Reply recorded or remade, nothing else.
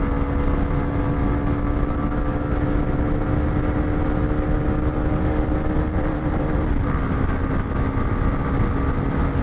recorded